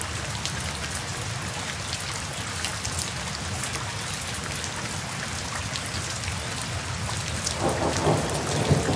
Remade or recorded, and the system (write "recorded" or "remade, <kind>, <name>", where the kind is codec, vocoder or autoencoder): recorded